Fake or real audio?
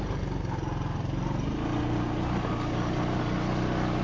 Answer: real